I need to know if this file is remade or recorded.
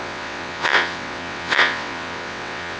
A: remade